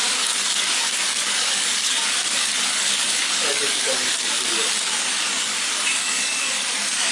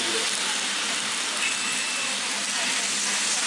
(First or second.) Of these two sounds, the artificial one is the first